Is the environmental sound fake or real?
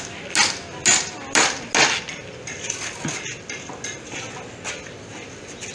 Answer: real